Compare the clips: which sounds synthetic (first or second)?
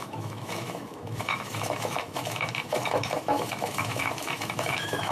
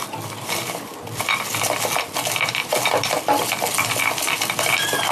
first